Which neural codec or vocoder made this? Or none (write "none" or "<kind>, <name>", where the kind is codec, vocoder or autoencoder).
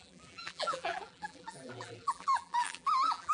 vocoder, BigVGAN v2